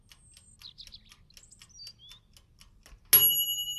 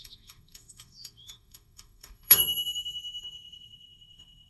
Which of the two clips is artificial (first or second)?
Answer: second